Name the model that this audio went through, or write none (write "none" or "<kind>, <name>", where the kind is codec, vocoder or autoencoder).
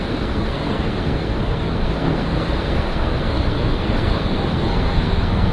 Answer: codec, SNAC